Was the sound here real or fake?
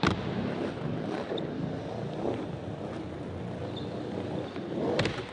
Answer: real